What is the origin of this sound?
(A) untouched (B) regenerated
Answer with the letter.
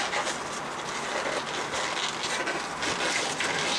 A